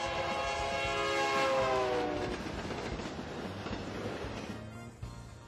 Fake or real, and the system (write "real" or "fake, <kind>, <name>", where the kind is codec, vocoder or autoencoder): real